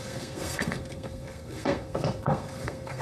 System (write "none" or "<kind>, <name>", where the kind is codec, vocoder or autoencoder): codec, SNAC